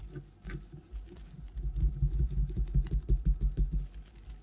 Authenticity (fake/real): real